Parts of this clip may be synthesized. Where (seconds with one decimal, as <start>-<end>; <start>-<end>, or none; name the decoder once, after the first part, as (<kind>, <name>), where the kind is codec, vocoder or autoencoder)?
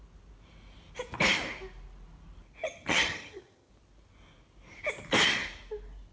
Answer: 2.6-3.7 (vocoder, HiFi-GAN)